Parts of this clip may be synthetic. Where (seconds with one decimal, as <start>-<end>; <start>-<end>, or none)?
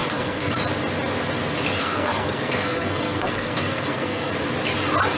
0.0-0.5; 1.8-4.3